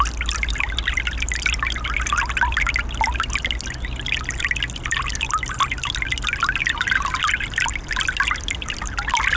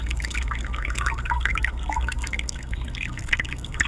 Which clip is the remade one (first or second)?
second